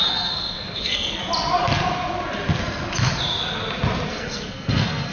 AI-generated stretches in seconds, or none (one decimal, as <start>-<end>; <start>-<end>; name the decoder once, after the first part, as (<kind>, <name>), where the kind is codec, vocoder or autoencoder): 0.0-1.2 (codec, SNAC); 4.1-5.1